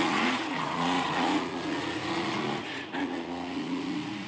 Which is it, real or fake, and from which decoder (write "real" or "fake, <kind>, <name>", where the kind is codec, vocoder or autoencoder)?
fake, vocoder, Vocos